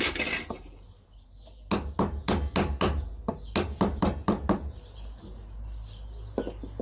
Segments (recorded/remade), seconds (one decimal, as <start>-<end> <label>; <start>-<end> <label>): 0.0-6.8 recorded